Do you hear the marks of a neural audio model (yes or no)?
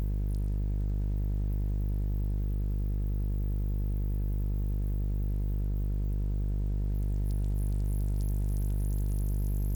no